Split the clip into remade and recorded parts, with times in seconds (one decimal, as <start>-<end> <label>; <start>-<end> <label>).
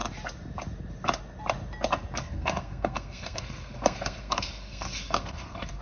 0.0-2.2 recorded; 2.2-5.8 remade